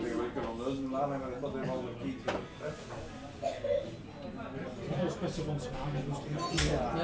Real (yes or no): yes